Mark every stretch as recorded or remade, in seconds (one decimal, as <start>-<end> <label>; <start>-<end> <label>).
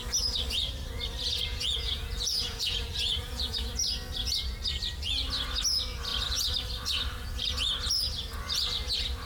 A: 0.0-1.5 recorded; 1.5-3.7 remade; 3.7-9.3 recorded